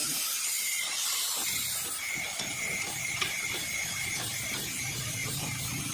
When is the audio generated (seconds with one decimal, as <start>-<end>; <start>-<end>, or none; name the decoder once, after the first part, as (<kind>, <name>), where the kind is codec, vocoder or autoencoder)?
0.0-1.4 (vocoder, BigVGAN v2); 2.0-5.9